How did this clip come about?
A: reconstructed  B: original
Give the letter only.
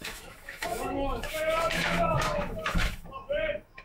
A